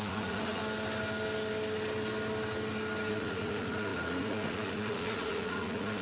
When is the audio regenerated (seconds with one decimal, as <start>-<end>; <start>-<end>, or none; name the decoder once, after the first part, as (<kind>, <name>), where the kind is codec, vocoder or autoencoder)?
0.0-0.6 (vocoder, Vocos); 3.1-6.0